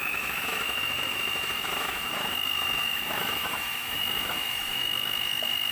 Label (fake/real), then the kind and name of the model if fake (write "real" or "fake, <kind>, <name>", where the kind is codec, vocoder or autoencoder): fake, autoencoder, DAC-VAE